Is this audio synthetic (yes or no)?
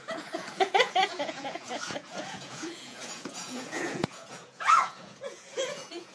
yes